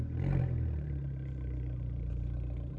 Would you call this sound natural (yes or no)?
no